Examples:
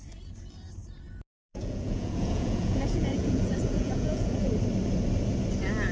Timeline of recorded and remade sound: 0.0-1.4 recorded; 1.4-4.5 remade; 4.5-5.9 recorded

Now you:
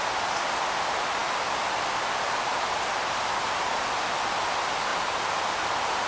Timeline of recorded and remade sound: 0.0-6.1 recorded

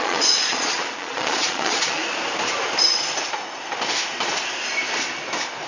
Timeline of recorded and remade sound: 0.0-2.0 remade; 2.0-5.7 recorded

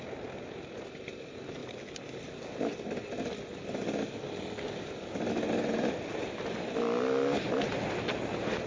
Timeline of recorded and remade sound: 0.0-8.7 recorded

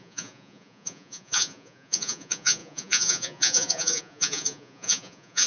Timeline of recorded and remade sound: 0.0-5.5 remade

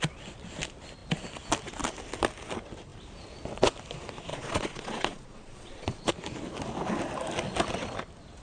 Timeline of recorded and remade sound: 0.0-4.3 recorded; 4.3-6.1 remade; 6.1-8.4 recorded

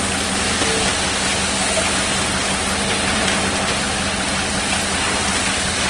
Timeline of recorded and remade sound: 0.0-5.9 recorded